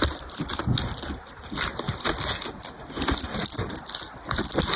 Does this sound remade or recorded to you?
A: recorded